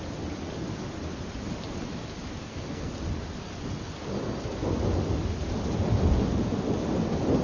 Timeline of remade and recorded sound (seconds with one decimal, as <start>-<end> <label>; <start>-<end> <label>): 0.0-2.4 recorded; 2.4-2.9 remade; 2.9-7.4 recorded